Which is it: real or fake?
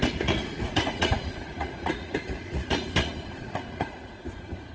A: fake